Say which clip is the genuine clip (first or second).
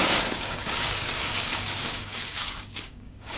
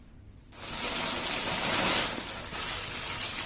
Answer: second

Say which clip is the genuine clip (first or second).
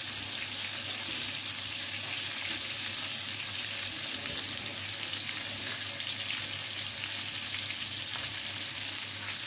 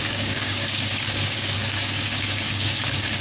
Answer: first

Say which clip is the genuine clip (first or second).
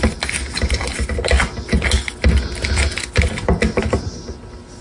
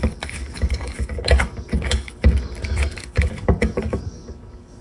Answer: first